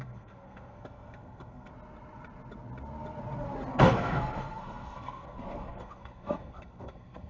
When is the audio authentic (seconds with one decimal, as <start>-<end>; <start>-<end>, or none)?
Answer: 1.7-3.7